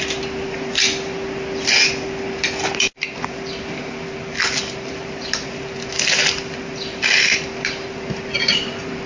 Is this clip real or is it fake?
real